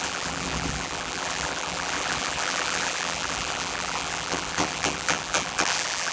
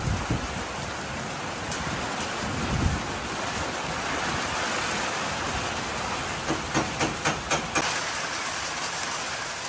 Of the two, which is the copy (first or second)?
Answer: first